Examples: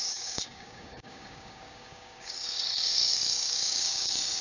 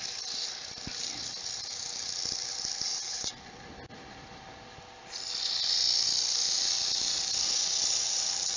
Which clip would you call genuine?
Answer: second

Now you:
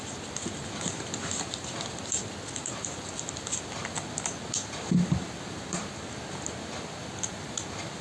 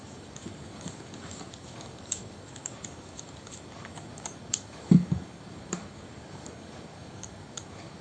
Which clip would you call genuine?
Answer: first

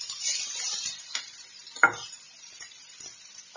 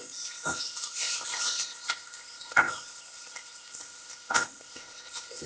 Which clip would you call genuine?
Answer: first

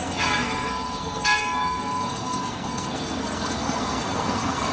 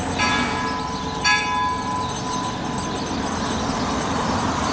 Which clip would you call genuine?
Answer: second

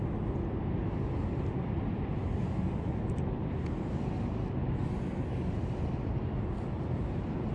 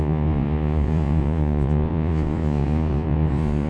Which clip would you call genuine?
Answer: first